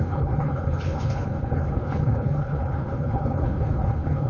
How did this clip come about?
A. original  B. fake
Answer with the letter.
B